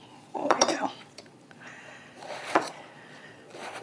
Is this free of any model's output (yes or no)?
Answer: no